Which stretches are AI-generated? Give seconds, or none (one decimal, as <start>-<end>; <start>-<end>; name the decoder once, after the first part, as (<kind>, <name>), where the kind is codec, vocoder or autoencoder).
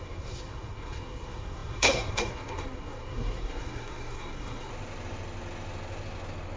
0.0-4.7 (codec, SNAC)